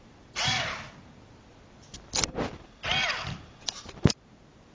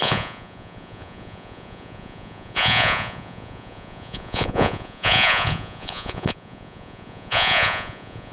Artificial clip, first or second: second